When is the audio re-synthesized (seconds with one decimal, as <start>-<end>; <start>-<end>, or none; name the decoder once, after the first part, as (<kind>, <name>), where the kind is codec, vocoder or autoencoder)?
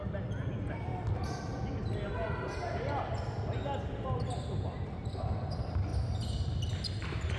none